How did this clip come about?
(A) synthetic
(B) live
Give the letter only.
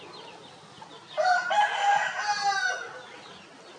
B